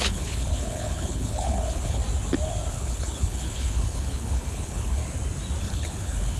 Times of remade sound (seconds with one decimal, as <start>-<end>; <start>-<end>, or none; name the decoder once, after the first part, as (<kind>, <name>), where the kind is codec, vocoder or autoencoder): 0.0-2.0 (codec, HILCodec); 2.7-5.0; 5.6-6.4